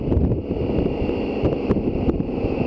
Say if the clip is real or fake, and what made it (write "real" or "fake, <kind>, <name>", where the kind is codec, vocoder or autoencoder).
fake, vocoder, BigVGAN v2